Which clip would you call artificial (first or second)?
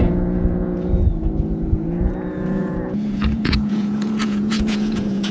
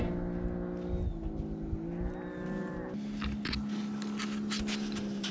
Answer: first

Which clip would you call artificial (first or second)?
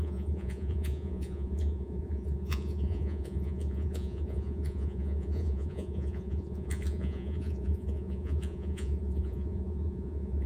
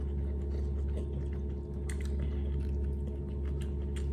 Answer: first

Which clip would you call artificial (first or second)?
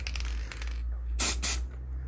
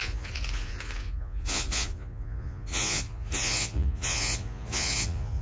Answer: second